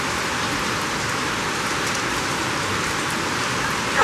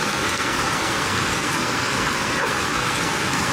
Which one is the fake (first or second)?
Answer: second